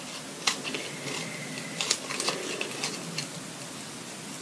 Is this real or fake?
real